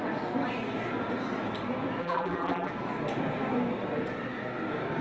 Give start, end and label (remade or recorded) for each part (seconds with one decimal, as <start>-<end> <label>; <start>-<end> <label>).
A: 0.0-2.0 recorded; 2.0-2.7 remade; 2.7-5.0 recorded